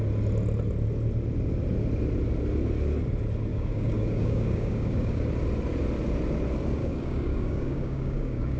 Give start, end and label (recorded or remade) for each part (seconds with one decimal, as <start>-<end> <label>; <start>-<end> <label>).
0.0-3.5 recorded; 3.5-5.2 remade; 5.2-6.8 recorded; 6.8-8.6 remade